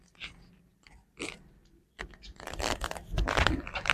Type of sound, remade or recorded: remade